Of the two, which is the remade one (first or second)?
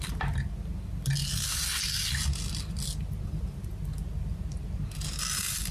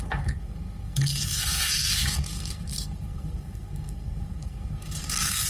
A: second